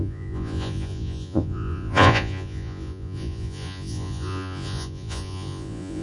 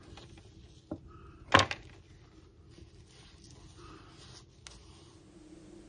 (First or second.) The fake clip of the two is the first